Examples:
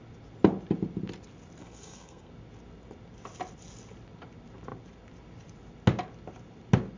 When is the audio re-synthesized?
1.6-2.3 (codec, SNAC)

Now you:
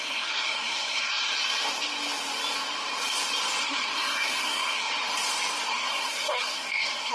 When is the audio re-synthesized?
0.0-1.2 (codec, SNAC); 3.6-4.9; 5.7-7.1

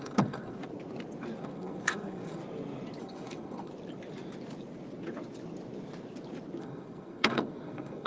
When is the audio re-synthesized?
0.0-0.6 (codec, SNAC); 1.4-2.4; 3.0-3.7; 6.6-8.1

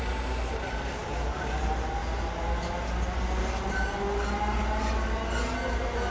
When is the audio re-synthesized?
none

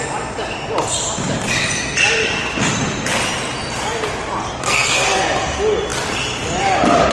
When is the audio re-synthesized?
4.6-5.2 (codec, SNAC)

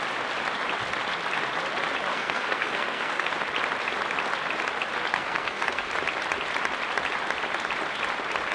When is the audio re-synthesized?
2.1-3.3 (codec, SNAC); 5.1-5.9

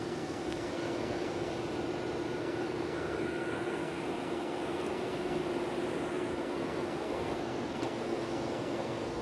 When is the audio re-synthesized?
0.0-1.5 (codec, SNAC); 2.4-5.4; 6.1-9.2